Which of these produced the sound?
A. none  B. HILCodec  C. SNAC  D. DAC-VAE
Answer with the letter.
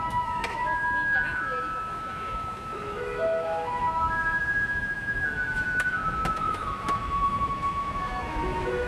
D